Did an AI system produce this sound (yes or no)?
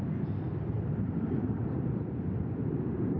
yes